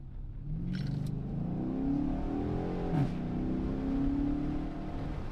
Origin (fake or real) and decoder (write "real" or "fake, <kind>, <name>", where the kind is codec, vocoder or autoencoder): real